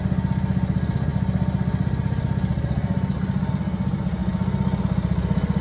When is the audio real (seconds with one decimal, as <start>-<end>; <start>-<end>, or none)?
0.0-5.6